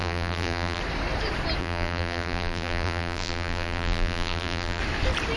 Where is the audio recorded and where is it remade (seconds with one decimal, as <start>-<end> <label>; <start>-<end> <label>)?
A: 0.0-0.8 remade; 0.8-1.6 recorded; 1.6-4.8 remade; 4.8-5.4 recorded